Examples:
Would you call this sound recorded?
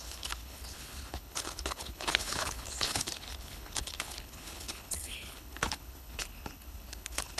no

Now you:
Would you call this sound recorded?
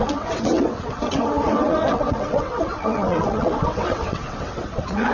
no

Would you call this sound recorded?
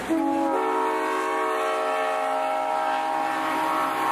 yes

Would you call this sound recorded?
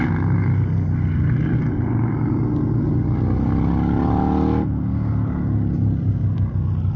yes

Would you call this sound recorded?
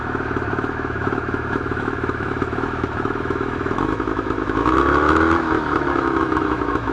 no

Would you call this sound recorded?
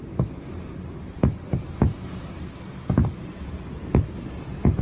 yes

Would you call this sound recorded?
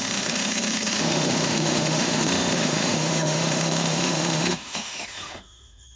no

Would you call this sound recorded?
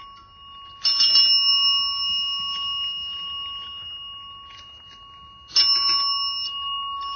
yes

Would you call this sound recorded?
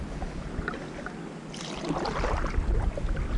yes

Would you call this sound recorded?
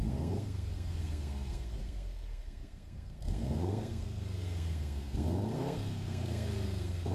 no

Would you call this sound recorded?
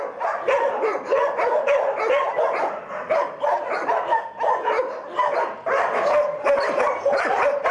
yes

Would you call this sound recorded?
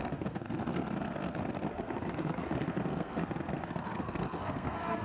no